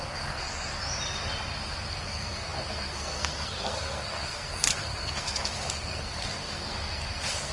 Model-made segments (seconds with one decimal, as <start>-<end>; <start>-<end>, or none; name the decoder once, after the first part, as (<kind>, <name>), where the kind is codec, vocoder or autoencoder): 0.0-0.7 (codec, SNAC); 1.9-7.5

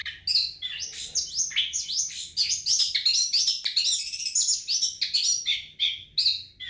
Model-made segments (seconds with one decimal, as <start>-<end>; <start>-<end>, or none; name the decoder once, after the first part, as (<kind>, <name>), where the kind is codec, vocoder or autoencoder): none

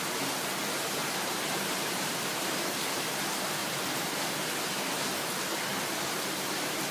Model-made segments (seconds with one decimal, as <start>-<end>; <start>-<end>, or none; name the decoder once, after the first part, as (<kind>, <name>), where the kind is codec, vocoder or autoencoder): 1.0-2.8 (vocoder, BigVGAN v2); 3.6-4.3; 5.7-6.9

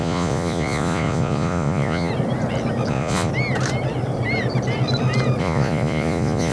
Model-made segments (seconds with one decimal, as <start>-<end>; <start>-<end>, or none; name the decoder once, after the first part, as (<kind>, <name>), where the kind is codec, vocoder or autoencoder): 0.0-2.1 (vocoder, Vocos); 2.9-3.3; 5.4-6.5

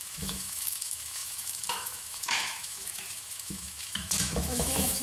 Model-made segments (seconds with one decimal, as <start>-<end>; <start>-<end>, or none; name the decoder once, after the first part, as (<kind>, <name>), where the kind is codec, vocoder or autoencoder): 0.0-5.0 (autoencoder, DAC-VAE)